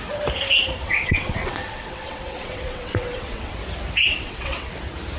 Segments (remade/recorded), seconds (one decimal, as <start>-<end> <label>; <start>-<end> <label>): 0.0-0.8 recorded; 0.8-3.5 remade; 3.5-4.1 recorded; 4.1-4.7 remade; 4.7-5.2 recorded